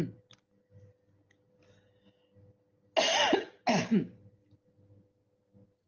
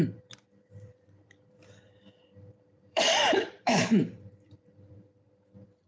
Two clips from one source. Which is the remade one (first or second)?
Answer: second